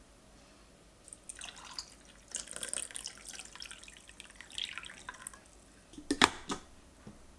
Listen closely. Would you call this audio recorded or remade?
recorded